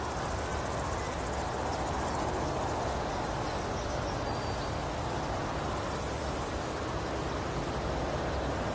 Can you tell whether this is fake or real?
real